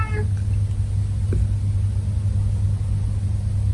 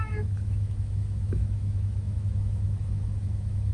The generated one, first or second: second